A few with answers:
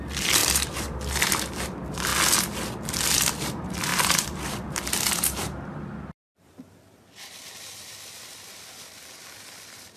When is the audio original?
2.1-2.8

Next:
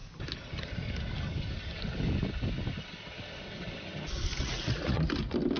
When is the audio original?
0.0-4.3; 5.0-5.6

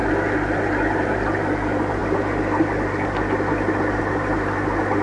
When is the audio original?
0.0-5.0

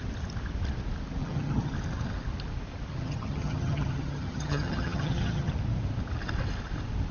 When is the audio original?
0.0-1.2; 1.7-2.9; 5.5-7.1